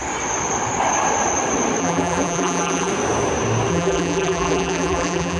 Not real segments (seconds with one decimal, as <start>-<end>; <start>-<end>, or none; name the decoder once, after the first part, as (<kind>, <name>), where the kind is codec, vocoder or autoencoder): 1.8-2.9 (vocoder, BigVGAN v2); 3.7-5.4